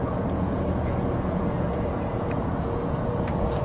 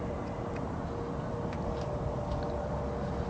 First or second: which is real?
second